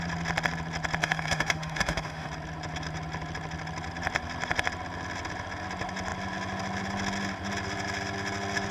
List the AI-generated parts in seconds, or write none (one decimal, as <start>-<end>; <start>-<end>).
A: 1.0-2.3